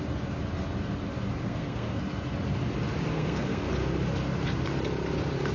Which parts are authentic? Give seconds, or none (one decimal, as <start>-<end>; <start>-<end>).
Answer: 0.0-1.4; 2.0-3.1; 3.7-5.5